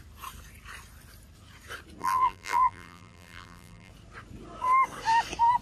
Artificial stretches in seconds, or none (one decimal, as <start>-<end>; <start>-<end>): 2.0-3.9